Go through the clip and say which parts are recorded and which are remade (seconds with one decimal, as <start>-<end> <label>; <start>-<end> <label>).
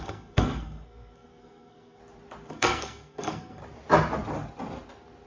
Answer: 0.0-2.0 remade; 2.0-2.5 recorded; 2.5-3.6 remade; 3.6-5.3 recorded